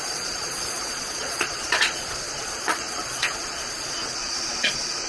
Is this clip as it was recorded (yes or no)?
no